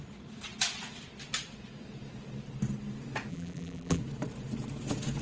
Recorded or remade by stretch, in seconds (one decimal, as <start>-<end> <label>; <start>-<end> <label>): 0.0-3.3 recorded; 3.3-4.0 remade; 4.0-5.2 recorded